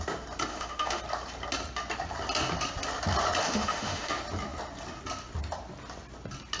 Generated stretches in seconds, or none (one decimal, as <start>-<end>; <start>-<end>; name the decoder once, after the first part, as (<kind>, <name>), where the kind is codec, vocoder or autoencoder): 0.5-1.0 (autoencoder, DAC-VAE); 3.4-4.1